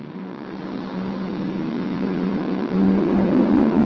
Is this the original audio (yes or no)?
no